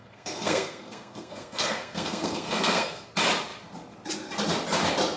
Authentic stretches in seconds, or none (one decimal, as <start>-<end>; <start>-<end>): 3.1-5.2